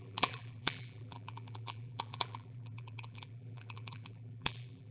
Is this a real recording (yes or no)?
no